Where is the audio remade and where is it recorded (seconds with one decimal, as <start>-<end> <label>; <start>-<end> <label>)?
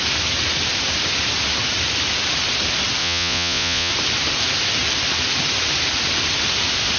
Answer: 0.0-3.0 recorded; 3.0-3.9 remade; 3.9-7.0 recorded